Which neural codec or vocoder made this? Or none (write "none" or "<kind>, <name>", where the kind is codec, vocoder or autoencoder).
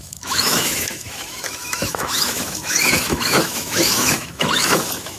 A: autoencoder, DAC-VAE